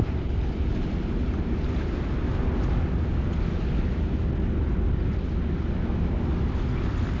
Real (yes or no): yes